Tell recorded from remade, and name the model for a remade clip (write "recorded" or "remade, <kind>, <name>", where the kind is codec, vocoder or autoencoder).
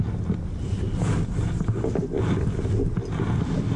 recorded